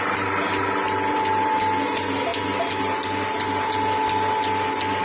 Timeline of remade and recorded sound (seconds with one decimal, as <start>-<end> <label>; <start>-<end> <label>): 0.0-5.0 recorded